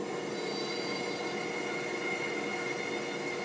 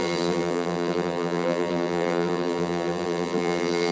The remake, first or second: second